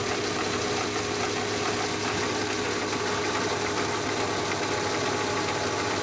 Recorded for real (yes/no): yes